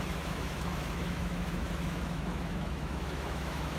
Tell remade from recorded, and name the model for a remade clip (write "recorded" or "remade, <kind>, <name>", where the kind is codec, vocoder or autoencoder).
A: remade, autoencoder, DAC-VAE